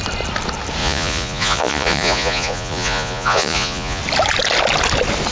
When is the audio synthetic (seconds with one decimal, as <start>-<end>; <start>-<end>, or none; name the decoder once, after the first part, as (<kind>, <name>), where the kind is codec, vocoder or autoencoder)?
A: 0.8-4.0 (vocoder, Vocos)